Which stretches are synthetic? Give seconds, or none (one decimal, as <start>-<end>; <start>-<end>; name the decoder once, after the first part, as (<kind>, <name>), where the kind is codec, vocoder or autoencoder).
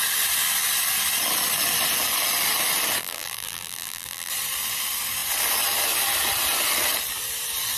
3.0-4.3 (vocoder, BigVGAN v2)